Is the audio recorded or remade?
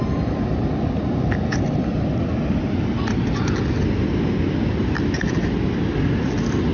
recorded